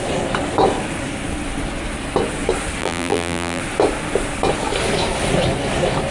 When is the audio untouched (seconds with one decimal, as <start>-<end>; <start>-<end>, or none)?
0.0-2.8; 3.6-6.1